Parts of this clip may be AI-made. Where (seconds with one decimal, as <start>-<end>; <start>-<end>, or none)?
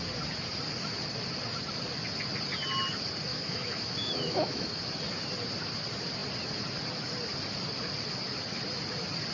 3.3-4.8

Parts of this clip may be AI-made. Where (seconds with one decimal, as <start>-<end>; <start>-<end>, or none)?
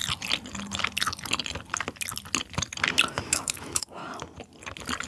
3.1-4.0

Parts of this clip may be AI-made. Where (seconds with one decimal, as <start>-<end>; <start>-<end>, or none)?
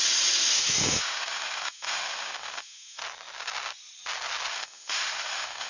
0.5-3.0; 4.5-5.7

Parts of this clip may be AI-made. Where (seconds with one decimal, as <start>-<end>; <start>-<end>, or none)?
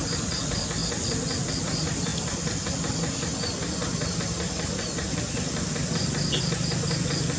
none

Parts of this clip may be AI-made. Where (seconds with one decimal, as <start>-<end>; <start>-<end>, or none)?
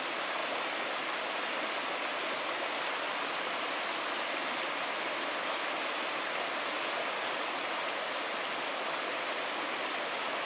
none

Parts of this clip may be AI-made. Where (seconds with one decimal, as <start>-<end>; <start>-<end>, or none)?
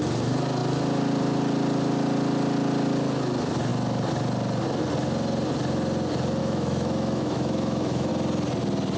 6.4-8.1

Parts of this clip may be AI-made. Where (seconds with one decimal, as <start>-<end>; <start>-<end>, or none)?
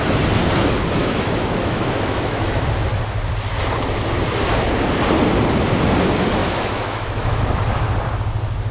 1.0-2.6; 6.4-7.4